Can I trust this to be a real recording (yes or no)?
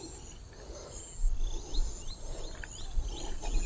yes